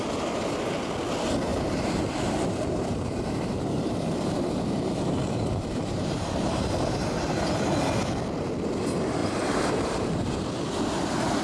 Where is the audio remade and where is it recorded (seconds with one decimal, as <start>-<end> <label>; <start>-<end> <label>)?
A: 0.0-1.5 recorded; 1.5-6.7 remade; 6.7-9.2 recorded; 9.2-10.3 remade; 10.3-11.4 recorded

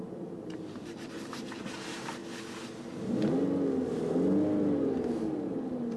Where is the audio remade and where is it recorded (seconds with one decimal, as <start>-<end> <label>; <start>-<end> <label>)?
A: 0.0-2.2 remade; 2.2-6.0 recorded

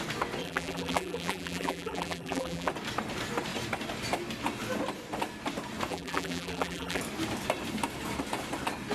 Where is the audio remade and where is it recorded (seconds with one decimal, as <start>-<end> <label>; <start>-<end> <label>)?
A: 0.0-0.4 recorded; 0.4-2.7 remade; 2.7-5.9 recorded; 5.9-7.0 remade; 7.0-8.9 recorded

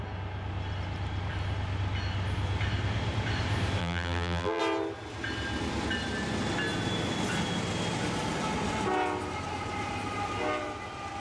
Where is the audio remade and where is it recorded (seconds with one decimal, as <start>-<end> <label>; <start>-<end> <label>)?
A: 0.0-3.8 recorded; 3.8-4.6 remade; 4.6-11.2 recorded

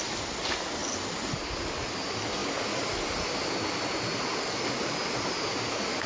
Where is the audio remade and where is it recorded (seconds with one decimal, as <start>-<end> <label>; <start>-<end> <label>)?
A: 0.0-6.1 recorded

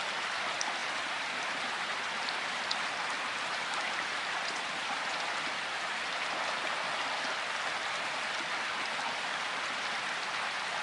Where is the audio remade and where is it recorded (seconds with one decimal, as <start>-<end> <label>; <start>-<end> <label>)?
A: 0.0-0.8 recorded; 0.8-2.1 remade; 2.1-10.8 recorded

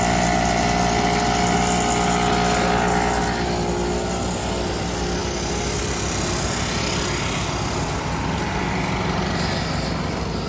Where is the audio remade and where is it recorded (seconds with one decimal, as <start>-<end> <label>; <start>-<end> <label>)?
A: 0.0-10.5 recorded